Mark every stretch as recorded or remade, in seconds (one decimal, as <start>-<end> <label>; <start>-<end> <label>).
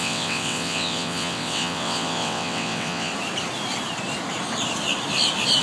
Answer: 0.0-3.1 remade; 3.1-5.6 recorded